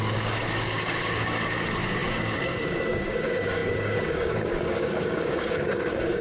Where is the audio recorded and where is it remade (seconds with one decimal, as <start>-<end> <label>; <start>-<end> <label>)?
0.0-6.2 remade

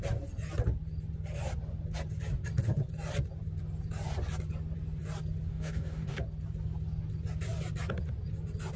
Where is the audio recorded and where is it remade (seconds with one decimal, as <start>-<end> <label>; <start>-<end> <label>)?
0.0-5.5 recorded; 5.5-6.2 remade; 6.2-8.8 recorded

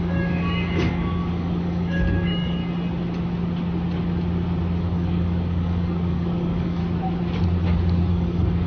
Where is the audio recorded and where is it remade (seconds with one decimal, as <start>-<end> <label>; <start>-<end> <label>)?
0.0-2.6 remade; 2.6-4.8 recorded; 4.8-6.8 remade; 6.8-8.1 recorded; 8.1-8.7 remade

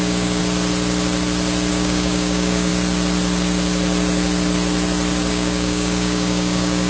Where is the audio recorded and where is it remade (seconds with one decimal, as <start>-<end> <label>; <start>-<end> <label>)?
0.0-0.4 remade; 0.4-1.7 recorded; 1.7-2.7 remade; 2.7-5.3 recorded; 5.3-6.9 remade

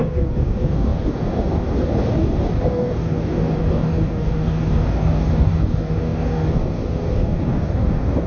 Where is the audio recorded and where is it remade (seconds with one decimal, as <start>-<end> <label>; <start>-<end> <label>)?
0.0-8.3 remade

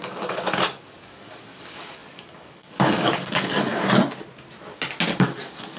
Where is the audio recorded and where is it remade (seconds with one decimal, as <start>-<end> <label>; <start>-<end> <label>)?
0.0-3.7 remade; 3.7-5.1 recorded; 5.1-5.8 remade